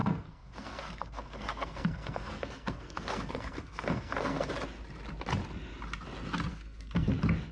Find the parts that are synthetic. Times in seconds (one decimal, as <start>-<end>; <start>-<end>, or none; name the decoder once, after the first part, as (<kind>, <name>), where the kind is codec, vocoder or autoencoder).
0.0-4.5 (codec, SNAC); 6.5-7.1